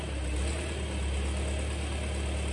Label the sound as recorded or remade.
recorded